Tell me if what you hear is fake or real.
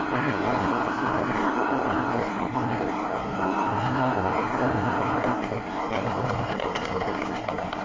fake